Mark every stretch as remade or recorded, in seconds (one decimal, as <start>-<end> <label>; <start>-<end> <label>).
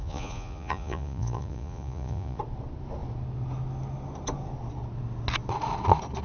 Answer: 0.0-2.4 remade; 2.4-6.2 recorded